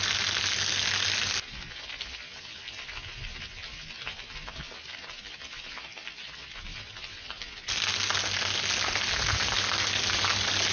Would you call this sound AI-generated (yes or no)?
no